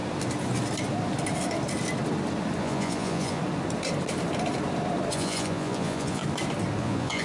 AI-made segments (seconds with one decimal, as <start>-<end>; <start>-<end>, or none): 2.6-3.4; 5.1-6.2; 6.8-7.2